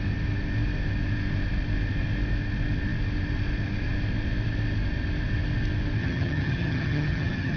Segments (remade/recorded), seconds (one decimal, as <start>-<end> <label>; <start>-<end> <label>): 0.0-6.0 recorded; 6.0-7.6 remade